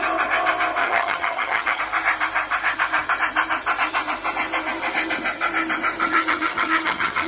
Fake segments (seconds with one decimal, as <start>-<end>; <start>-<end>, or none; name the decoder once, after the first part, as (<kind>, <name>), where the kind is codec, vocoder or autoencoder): 0.8-1.8 (vocoder, HiFi-GAN); 6.1-7.3